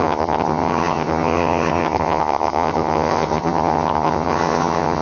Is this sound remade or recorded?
remade